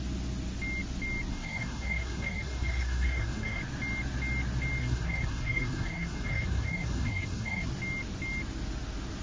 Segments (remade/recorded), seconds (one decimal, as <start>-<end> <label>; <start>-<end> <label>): 0.0-1.3 recorded; 1.3-3.6 remade; 3.6-4.8 recorded; 4.8-7.7 remade; 7.7-9.2 recorded